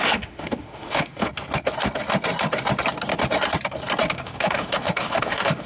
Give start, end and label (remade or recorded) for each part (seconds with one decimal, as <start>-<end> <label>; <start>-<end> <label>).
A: 0.0-1.3 remade; 1.3-4.1 recorded; 4.1-5.7 remade